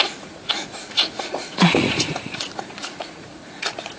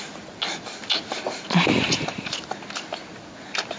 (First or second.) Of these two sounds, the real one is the second